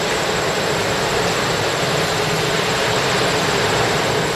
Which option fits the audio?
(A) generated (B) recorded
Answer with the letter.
B